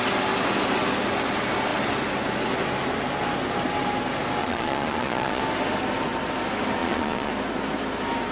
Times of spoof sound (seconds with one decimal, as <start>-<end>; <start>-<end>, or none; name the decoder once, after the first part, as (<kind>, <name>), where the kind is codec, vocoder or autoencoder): 4.4-5.4 (vocoder, Vocos); 6.8-7.3